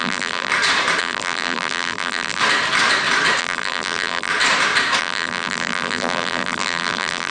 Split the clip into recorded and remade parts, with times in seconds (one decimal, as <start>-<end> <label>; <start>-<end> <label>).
0.0-0.5 remade; 0.5-1.0 recorded; 1.0-2.4 remade; 2.4-3.4 recorded; 3.4-4.3 remade; 4.3-5.0 recorded; 5.0-7.3 remade